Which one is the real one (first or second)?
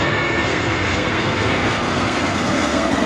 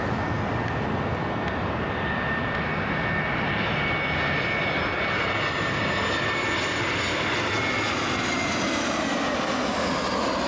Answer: second